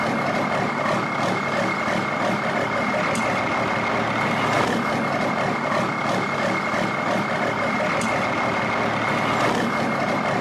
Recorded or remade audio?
recorded